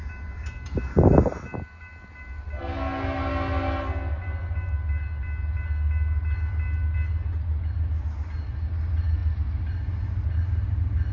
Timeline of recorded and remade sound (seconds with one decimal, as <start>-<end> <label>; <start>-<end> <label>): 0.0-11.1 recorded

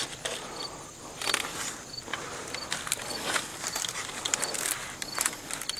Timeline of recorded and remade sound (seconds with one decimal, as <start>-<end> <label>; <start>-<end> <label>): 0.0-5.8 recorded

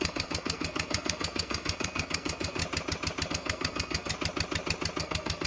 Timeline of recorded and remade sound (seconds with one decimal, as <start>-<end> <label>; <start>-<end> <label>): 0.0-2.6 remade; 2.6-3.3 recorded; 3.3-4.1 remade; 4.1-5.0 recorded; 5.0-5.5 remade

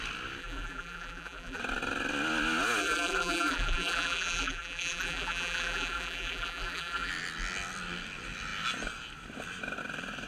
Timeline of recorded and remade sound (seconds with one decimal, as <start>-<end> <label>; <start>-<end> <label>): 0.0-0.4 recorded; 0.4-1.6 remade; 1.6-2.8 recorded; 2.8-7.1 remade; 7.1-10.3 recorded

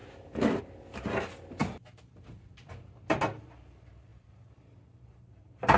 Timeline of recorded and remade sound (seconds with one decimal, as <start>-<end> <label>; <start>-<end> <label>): 0.0-5.8 recorded

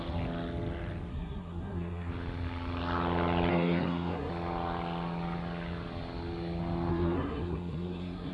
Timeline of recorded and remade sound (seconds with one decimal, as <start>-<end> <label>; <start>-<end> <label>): 0.0-1.1 recorded; 1.1-2.1 remade; 2.1-3.5 recorded; 3.5-4.3 remade; 4.3-6.9 recorded; 6.9-8.3 remade